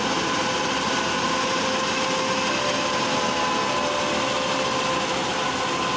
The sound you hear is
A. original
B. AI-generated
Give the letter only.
A